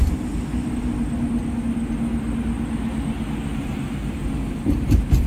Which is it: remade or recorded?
recorded